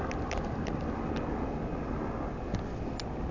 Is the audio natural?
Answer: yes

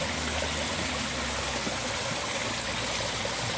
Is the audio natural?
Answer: yes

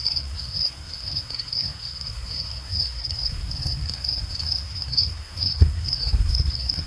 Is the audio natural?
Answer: no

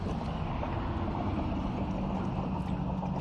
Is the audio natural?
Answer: yes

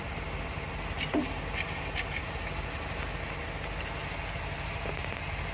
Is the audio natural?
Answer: no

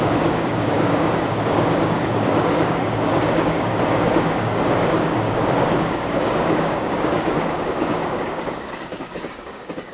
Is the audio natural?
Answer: no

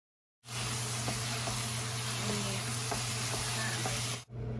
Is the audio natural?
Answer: yes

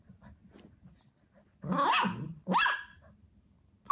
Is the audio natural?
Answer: yes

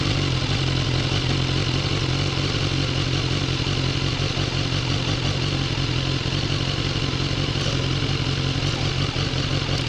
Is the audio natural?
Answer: yes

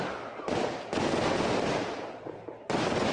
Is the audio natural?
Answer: yes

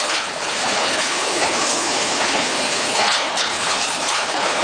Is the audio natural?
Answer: no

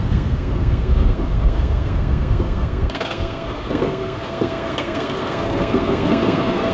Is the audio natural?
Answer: no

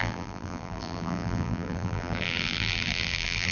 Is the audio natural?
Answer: no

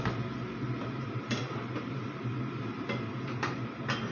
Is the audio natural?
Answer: yes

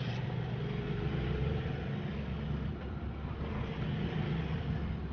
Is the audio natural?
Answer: yes